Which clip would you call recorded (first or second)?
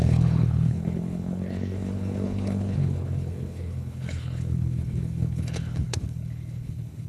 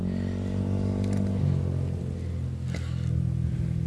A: second